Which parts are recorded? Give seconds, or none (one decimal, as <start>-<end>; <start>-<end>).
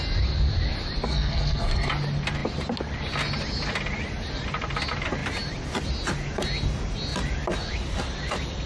0.0-1.1; 1.9-8.7